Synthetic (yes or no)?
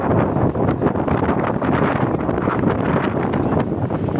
no